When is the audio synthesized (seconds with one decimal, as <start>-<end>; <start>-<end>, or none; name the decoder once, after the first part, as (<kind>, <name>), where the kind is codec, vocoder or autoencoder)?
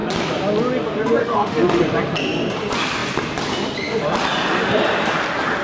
1.2-1.8 (autoencoder, DAC-VAE)